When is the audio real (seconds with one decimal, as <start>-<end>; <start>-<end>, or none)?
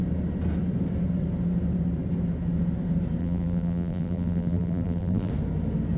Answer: 0.0-3.2; 5.3-6.0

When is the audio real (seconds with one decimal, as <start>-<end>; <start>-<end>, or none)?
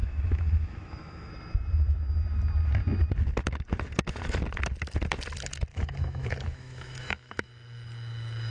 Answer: 1.3-5.7; 7.5-8.5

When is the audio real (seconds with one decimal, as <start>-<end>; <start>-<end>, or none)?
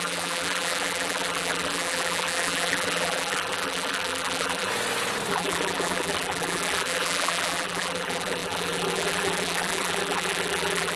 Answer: 4.7-5.3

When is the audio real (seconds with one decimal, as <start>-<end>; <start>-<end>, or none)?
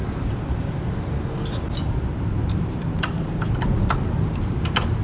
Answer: 0.8-2.4; 3.8-5.0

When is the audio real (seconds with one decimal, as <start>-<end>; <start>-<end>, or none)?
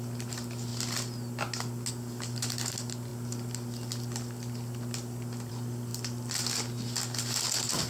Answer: 0.0-7.9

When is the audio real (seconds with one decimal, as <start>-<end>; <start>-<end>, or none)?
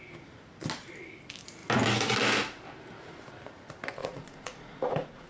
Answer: 0.0-4.0